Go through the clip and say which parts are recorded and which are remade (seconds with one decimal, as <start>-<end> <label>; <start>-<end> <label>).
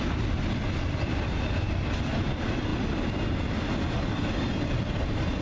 0.0-5.4 recorded